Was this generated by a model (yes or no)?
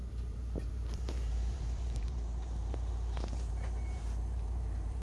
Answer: yes